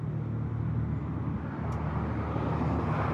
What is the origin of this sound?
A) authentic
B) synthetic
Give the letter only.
A